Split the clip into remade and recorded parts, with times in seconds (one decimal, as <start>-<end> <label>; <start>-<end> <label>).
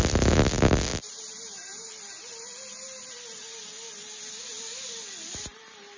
0.0-6.0 recorded